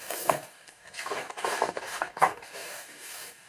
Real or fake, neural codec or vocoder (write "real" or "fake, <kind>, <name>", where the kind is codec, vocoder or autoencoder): fake, codec, DAC